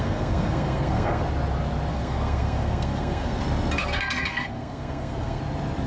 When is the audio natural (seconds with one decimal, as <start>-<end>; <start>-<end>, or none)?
1.2-1.9; 3.4-3.8; 5.4-5.9